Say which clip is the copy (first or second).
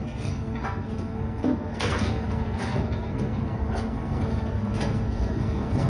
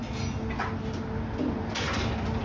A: first